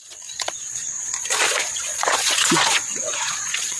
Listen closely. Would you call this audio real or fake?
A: fake